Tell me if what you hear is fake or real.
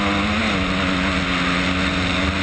real